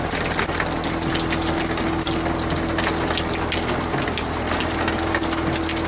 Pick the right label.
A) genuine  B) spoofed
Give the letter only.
A